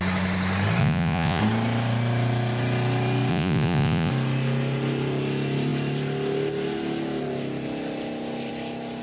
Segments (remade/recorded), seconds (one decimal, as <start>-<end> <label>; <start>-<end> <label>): 0.0-0.8 recorded; 0.8-1.4 remade; 1.4-3.3 recorded; 3.3-4.1 remade; 4.1-9.0 recorded